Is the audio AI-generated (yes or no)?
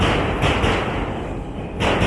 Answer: no